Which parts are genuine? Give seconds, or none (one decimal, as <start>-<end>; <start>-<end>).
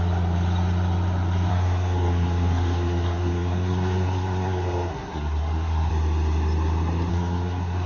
0.0-1.5; 5.9-7.1